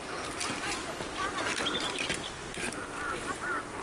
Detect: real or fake real